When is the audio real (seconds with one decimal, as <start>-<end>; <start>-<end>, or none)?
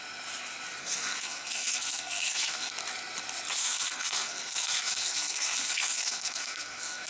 0.0-0.8; 2.7-3.6